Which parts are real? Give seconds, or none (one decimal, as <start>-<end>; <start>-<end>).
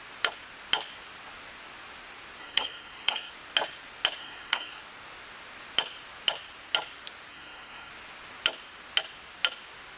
0.0-2.4; 3.3-4.2; 4.8-7.3; 7.9-10.0